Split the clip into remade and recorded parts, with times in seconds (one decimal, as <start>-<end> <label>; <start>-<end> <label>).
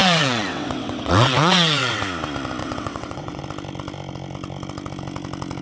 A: 0.0-2.0 remade; 2.0-2.6 recorded; 2.6-3.4 remade; 3.4-5.6 recorded